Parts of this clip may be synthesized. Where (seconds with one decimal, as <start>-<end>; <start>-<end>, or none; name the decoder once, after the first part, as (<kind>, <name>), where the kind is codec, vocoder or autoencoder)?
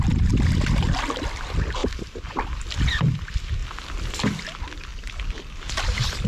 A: 1.8-2.4 (vocoder, BigVGAN v2)